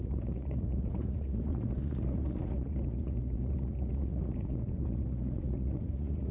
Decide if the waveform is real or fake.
fake